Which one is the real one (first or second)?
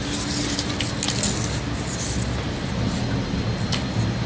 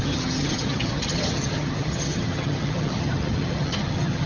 first